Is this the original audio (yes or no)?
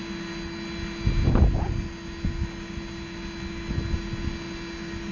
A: yes